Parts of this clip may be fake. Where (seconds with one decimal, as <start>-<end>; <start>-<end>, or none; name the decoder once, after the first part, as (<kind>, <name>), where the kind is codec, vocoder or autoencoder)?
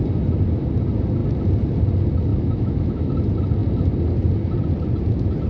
2.3-3.1 (autoencoder, DAC-VAE)